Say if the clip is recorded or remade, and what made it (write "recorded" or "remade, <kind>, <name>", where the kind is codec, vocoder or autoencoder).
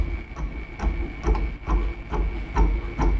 recorded